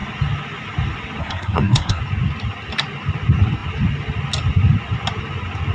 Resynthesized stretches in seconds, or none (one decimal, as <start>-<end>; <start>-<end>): 1.2-2.0